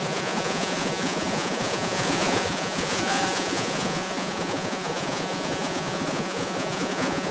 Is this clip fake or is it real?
fake